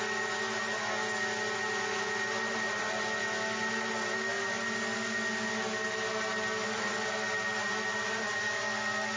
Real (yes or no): yes